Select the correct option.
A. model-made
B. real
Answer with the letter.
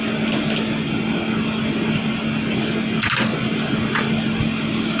B